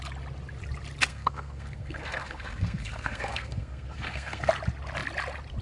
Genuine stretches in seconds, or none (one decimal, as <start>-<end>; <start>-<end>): 0.0-1.1; 4.5-5.6